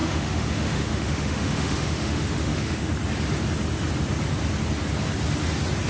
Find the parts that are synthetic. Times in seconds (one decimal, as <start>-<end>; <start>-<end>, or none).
0.0-2.9